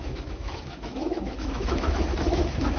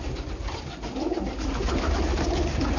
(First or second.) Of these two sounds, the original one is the second